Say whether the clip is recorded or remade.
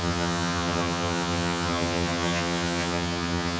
remade